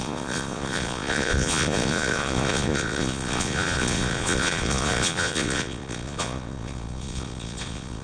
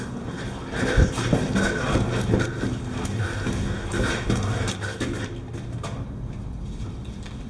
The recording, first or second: second